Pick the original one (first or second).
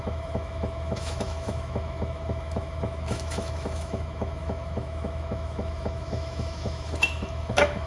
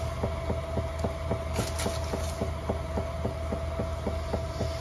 second